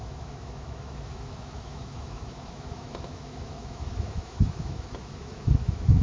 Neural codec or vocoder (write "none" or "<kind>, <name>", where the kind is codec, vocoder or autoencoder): autoencoder, DAC-VAE